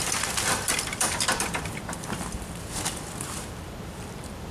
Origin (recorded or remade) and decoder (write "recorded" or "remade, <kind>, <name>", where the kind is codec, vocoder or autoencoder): remade, vocoder, BigVGAN v2